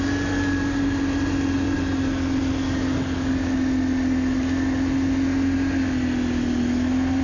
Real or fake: real